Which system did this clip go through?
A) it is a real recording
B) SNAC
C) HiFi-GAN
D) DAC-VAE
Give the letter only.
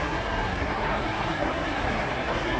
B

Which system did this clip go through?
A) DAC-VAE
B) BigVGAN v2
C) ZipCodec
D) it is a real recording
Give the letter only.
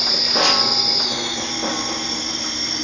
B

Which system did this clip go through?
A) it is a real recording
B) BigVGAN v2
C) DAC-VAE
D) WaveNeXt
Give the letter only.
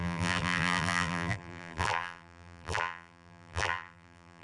B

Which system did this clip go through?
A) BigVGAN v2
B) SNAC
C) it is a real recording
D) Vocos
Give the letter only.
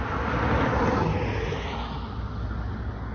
C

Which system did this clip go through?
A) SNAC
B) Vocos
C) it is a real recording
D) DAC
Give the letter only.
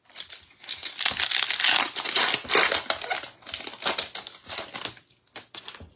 C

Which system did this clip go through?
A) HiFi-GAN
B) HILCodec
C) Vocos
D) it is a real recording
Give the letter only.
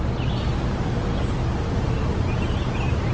D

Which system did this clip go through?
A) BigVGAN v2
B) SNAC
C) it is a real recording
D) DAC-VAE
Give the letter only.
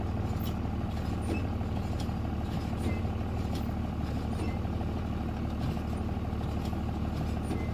C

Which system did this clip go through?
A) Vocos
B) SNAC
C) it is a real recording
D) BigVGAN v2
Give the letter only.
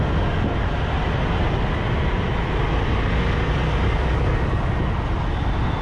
C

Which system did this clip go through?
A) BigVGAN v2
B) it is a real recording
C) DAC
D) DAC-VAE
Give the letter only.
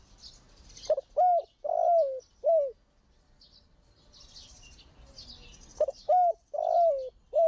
B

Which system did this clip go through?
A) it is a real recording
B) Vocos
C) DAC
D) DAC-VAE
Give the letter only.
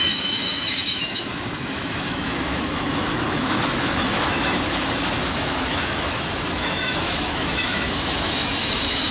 D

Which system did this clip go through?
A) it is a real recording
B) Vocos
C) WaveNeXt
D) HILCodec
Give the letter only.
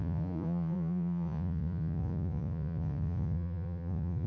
B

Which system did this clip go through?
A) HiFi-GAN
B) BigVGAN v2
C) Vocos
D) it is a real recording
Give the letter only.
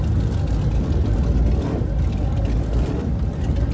D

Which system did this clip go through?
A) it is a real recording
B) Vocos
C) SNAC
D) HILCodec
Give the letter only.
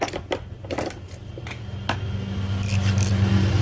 A